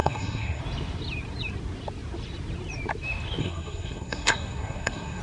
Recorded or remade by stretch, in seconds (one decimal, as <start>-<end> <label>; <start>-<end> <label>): 0.0-0.6 remade; 0.6-3.4 recorded; 3.4-5.2 remade